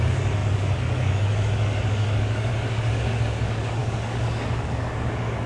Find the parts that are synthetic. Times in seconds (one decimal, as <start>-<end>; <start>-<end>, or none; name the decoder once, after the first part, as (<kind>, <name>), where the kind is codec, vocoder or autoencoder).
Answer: 0.0-5.5 (codec, DAC)